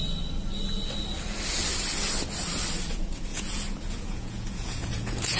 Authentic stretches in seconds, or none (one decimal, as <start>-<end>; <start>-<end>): 0.0-3.3